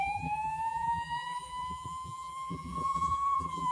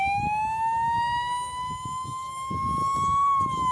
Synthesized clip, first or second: first